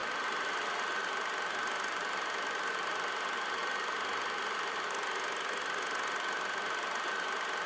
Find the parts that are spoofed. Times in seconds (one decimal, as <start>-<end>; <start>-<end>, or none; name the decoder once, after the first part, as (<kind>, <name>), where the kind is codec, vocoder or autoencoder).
none